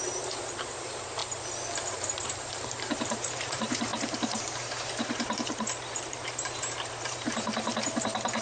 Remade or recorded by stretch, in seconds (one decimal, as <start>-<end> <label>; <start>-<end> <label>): 0.0-1.2 remade; 1.2-1.9 recorded; 1.9-8.4 remade